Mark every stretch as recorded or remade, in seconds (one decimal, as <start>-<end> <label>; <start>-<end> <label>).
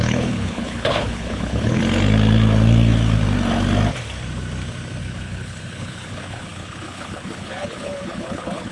0.0-1.8 remade; 1.8-5.0 recorded; 5.0-8.7 remade